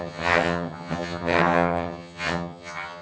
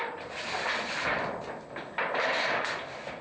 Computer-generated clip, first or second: first